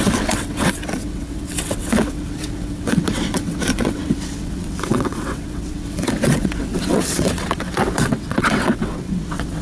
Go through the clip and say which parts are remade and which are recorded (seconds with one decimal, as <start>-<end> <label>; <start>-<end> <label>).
0.0-9.6 remade